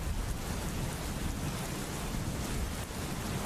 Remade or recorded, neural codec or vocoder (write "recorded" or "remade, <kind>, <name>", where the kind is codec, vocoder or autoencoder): recorded